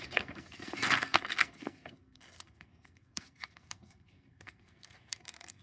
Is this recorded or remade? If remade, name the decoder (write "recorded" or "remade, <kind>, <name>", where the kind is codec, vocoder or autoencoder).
remade, codec, SNAC